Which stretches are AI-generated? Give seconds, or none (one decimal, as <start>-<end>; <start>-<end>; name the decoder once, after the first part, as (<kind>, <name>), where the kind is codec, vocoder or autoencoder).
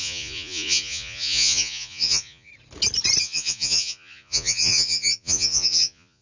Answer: 0.0-2.5 (vocoder, Vocos); 3.2-6.2